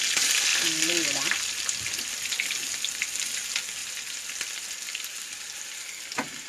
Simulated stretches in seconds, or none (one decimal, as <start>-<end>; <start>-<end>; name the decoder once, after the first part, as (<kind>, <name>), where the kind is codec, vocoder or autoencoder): 0.5-2.1 (vocoder, BigVGAN v2)